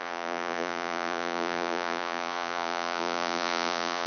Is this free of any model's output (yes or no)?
no